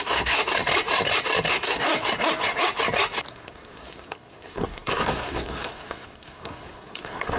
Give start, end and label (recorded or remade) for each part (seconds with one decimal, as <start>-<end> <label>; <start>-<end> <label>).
0.0-0.4 remade; 0.4-1.5 recorded; 1.5-1.9 remade; 1.9-3.3 recorded; 3.3-7.4 remade